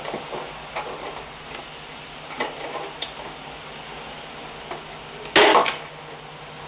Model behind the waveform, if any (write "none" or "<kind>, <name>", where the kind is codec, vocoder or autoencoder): none